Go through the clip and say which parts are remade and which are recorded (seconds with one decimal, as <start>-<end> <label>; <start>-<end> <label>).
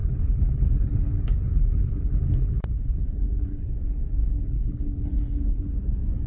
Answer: 0.0-3.7 remade; 3.7-4.2 recorded; 4.2-5.7 remade; 5.7-6.3 recorded